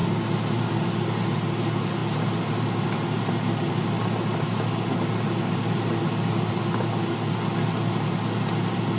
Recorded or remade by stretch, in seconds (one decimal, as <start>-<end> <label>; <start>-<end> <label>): 0.0-9.0 recorded